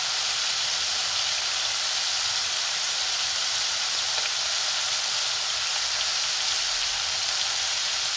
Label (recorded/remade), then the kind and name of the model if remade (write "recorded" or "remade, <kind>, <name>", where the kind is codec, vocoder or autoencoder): recorded